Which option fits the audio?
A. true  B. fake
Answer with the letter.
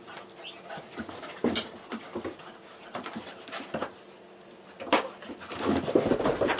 A